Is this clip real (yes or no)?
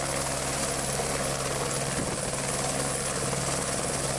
yes